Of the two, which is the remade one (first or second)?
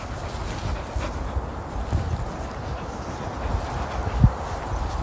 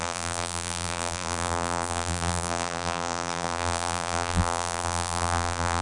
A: second